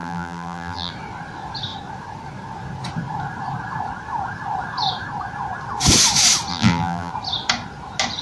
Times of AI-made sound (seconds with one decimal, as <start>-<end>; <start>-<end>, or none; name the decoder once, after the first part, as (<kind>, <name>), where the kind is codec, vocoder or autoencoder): 0.0-0.9 (vocoder, BigVGAN v2); 6.5-7.1